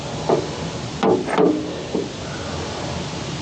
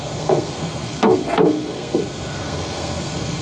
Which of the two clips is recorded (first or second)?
first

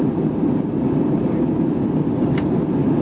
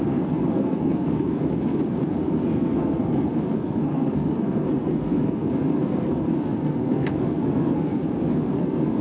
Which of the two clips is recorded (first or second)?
first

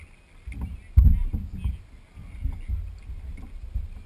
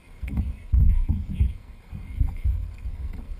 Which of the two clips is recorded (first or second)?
first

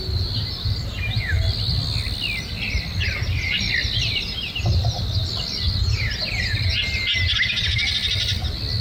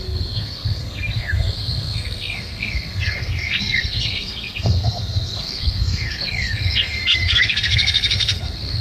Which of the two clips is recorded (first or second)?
first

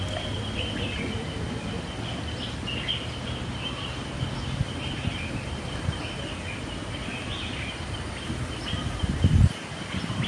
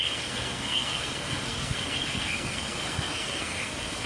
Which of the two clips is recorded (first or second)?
first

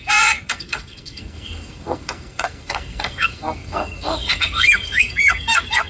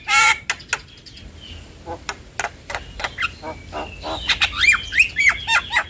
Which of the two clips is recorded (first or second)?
second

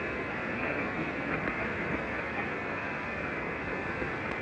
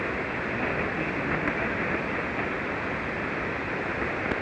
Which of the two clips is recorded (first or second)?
second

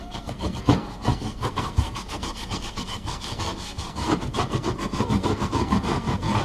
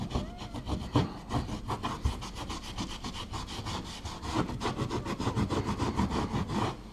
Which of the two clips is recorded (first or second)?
second